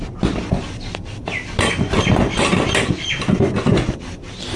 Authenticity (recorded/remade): recorded